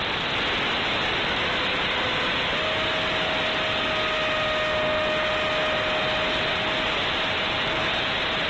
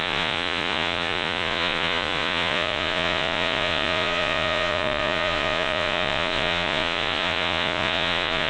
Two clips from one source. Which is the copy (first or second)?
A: second